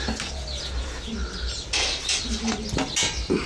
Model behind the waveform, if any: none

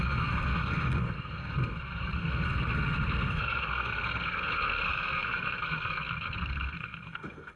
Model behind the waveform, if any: codec, SNAC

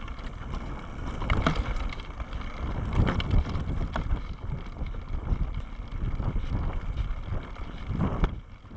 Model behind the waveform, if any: none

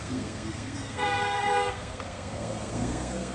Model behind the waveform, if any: codec, SNAC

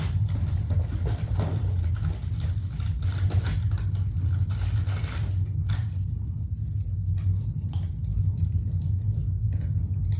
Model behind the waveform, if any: none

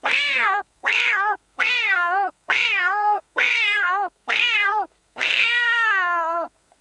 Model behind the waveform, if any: codec, SNAC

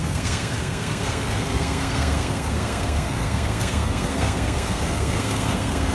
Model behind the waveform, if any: codec, SNAC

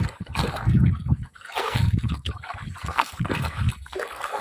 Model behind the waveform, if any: codec, SNAC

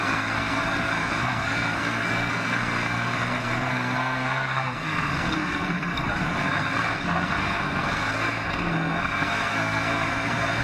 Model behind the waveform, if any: codec, SNAC